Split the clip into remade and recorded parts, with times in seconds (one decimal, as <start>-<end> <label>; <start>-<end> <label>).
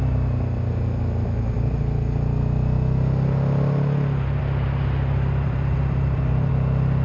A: 0.0-4.4 recorded; 4.4-6.5 remade; 6.5-7.0 recorded